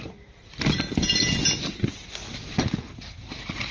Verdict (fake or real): real